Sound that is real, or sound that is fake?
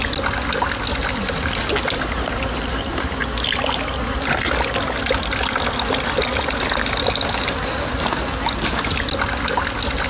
real